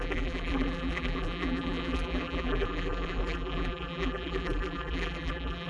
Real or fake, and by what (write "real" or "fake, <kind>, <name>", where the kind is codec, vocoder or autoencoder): fake, vocoder, BigVGAN v2